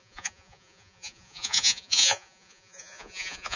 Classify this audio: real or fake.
fake